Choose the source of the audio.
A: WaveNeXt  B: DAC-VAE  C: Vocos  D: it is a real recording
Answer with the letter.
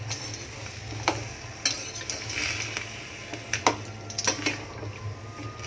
D